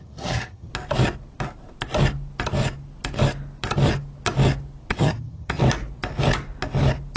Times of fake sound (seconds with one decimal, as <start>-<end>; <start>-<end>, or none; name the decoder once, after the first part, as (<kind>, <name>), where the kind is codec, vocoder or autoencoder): 0.0-0.7 (vocoder, HiFi-GAN); 4.9-5.6